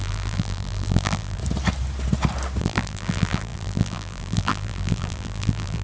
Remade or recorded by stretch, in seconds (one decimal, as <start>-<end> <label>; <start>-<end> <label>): 0.0-1.4 remade; 1.4-2.6 recorded; 2.6-5.8 remade